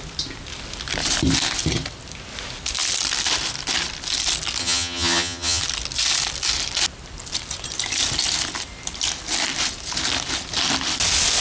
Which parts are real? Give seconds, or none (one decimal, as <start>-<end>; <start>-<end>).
0.0-4.6; 5.6-11.4